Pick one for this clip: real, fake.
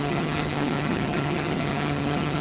fake